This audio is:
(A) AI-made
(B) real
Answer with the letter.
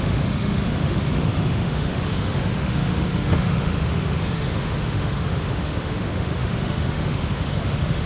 A